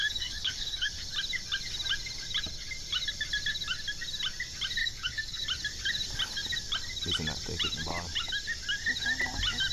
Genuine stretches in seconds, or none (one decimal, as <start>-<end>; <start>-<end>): 0.9-4.8; 5.4-9.7